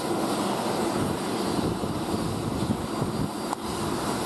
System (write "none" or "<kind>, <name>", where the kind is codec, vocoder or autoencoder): none